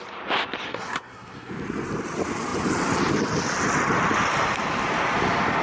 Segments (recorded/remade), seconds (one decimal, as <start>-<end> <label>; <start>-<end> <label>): 0.0-0.7 recorded; 0.7-1.5 remade; 1.5-5.6 recorded